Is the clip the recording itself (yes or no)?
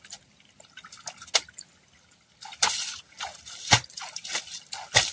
yes